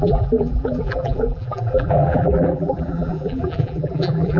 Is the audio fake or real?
fake